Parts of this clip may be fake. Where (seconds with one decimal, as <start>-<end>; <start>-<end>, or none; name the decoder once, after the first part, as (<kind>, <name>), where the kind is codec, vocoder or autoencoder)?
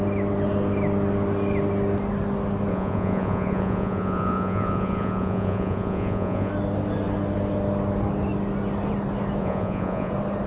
2.7-6.5 (vocoder, Vocos); 9.4-10.1